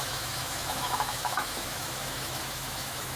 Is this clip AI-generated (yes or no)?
yes